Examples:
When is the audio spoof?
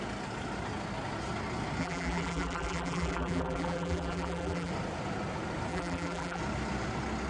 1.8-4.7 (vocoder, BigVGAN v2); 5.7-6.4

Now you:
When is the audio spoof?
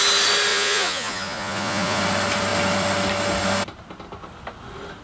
0.5-2.0 (vocoder, Vocos)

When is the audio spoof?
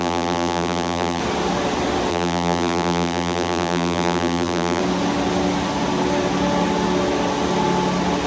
0.0-1.2 (vocoder, BigVGAN v2); 2.1-4.8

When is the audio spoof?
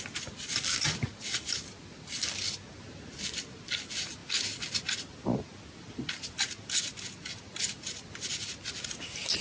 none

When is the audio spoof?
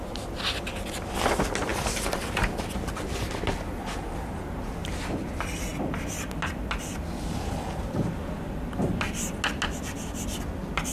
4.8-5.3 (vocoder, BigVGAN v2)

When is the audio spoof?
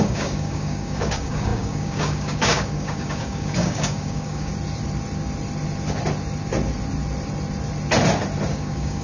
0.0-4.5 (codec, DAC); 8.5-9.0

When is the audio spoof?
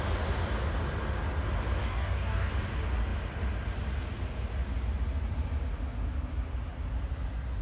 1.8-2.5 (codec, DAC)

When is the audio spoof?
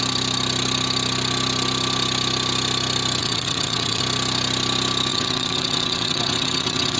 3.2-4.0 (vocoder, WaveNeXt); 5.1-7.0